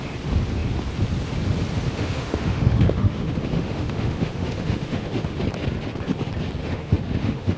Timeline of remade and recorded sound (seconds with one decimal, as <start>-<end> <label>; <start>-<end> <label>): 0.0-1.9 recorded; 1.9-5.4 remade; 5.4-6.6 recorded; 6.6-7.6 remade

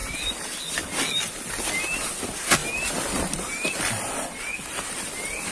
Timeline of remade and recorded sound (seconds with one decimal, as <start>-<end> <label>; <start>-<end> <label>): 0.0-5.5 recorded

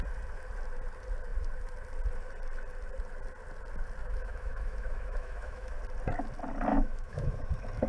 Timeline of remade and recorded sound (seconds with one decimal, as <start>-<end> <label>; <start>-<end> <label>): 0.0-4.0 recorded; 4.0-5.8 remade; 5.8-6.7 recorded; 6.7-7.5 remade; 7.5-7.9 recorded

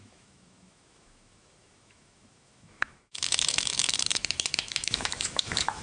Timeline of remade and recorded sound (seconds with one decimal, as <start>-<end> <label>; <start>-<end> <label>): 0.0-5.8 remade

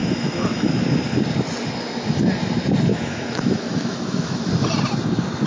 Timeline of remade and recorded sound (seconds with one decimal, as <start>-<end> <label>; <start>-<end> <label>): 0.0-0.7 remade; 0.7-2.9 recorded; 2.9-4.5 remade; 4.5-5.5 recorded

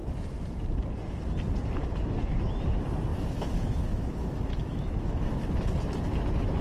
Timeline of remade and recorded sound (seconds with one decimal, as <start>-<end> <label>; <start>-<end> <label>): 0.0-3.1 recorded; 3.1-5.3 remade; 5.3-6.6 recorded

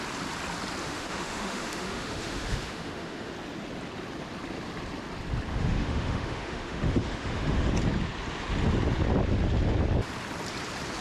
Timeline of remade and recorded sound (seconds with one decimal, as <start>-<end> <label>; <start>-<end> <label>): 0.0-0.8 recorded; 0.8-3.3 remade; 3.3-5.5 recorded; 5.5-7.7 remade; 7.7-11.0 recorded